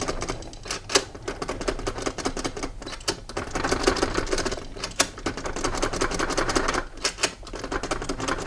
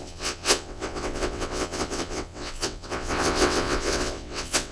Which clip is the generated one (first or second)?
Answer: second